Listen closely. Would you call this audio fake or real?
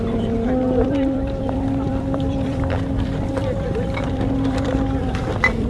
fake